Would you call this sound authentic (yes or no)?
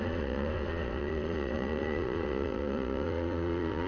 no